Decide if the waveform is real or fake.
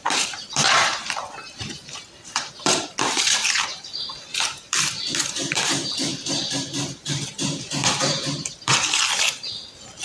fake